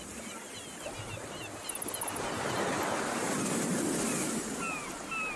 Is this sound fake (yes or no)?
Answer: no